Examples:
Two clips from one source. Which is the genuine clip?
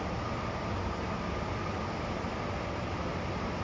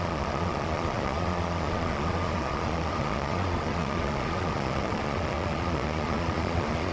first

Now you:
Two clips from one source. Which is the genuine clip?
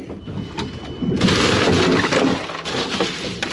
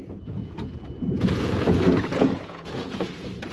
first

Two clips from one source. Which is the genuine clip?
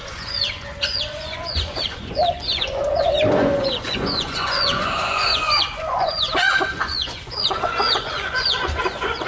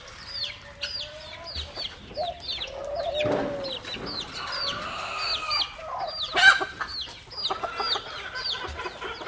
second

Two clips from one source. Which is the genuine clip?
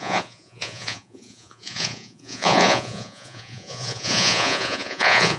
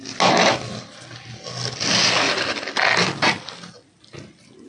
second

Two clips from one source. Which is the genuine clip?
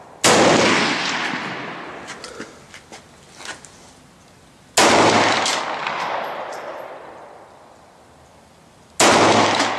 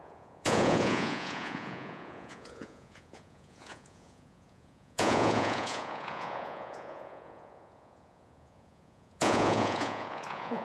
first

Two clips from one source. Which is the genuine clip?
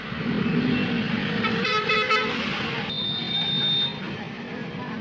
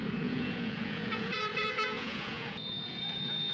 first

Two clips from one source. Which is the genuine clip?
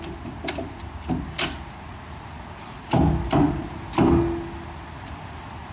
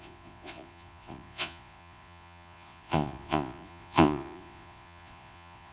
first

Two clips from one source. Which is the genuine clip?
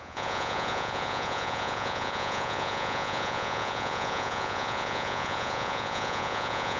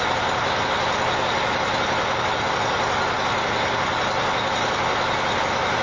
second